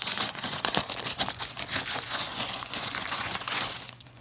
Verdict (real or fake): fake